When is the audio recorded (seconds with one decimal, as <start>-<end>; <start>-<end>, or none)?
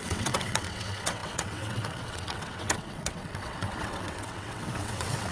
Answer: none